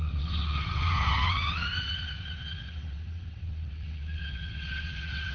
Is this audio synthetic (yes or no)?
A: yes